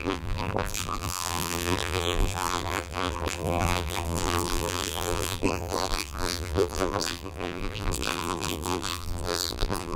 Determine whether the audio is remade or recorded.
remade